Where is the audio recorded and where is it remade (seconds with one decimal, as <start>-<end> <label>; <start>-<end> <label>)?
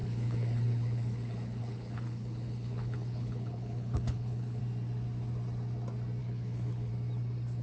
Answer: 0.0-4.6 remade; 4.6-6.2 recorded; 6.2-6.9 remade; 6.9-7.6 recorded